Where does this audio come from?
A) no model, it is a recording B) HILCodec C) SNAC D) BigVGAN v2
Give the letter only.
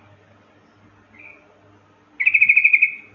A